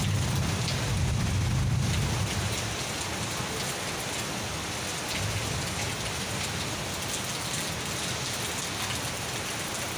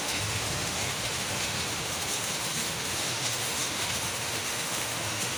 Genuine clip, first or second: first